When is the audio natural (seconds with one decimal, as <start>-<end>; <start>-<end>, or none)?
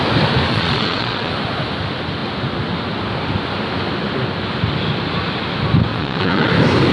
0.0-0.5; 1.3-5.9; 6.5-6.9